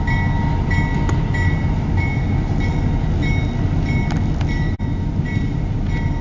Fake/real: real